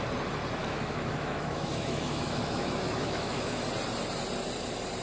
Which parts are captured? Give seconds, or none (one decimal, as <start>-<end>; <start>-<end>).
0.0-0.6; 3.6-5.0